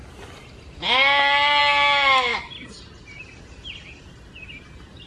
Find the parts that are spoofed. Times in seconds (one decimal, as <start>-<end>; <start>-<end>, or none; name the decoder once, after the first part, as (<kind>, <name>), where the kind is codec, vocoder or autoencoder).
none